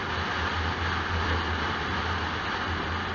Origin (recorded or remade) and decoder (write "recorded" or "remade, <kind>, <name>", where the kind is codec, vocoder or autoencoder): recorded